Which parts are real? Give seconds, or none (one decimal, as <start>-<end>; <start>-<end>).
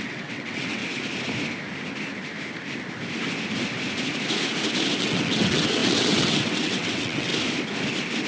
0.8-5.0; 7.3-8.3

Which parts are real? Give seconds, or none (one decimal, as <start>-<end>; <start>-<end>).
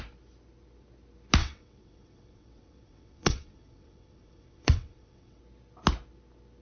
0.0-1.4; 5.4-6.6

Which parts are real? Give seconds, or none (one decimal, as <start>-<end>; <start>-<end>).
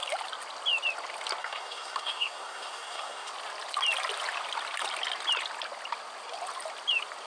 0.0-1.4; 3.3-7.3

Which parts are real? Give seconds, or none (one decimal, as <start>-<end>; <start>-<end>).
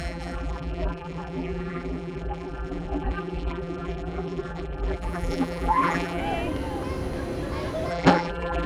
6.2-7.9